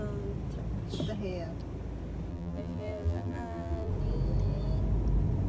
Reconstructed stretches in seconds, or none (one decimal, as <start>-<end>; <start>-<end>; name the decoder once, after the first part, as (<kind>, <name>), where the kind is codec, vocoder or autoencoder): 2.3-3.9 (vocoder, BigVGAN v2)